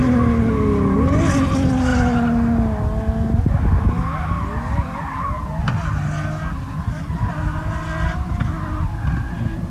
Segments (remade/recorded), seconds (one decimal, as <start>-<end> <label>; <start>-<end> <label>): 0.0-9.7 recorded